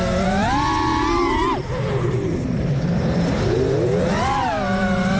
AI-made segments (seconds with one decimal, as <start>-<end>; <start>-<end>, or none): 0.9-4.0

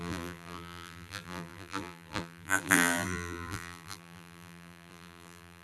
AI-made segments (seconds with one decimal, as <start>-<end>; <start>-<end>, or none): 0.0-5.6

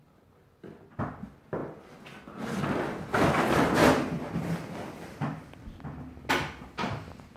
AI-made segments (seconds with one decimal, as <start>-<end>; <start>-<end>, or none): none

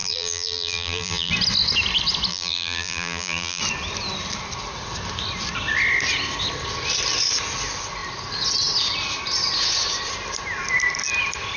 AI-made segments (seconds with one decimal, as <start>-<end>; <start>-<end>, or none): 0.0-1.3; 2.3-3.6

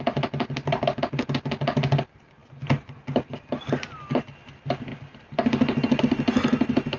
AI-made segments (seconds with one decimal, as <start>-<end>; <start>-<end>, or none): none

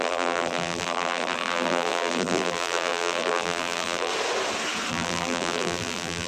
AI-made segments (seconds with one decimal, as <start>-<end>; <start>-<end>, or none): 0.0-4.1; 4.9-6.3